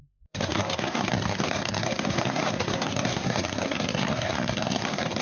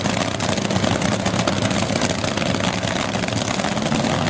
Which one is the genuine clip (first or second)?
second